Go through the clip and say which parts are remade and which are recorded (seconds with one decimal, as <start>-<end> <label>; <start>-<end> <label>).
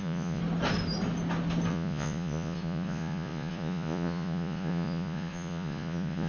0.0-0.4 remade; 0.4-1.7 recorded; 1.7-6.3 remade